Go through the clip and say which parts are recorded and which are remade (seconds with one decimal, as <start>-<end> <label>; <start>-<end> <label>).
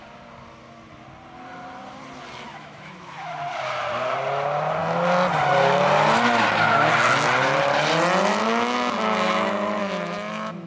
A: 0.0-2.5 recorded; 2.5-3.3 remade; 3.3-9.8 recorded; 9.8-10.7 remade